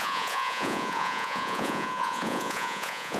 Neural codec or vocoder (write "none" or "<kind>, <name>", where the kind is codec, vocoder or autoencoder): vocoder, Vocos